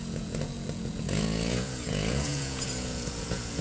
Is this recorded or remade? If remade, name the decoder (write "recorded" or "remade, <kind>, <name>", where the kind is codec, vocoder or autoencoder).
remade, vocoder, Vocos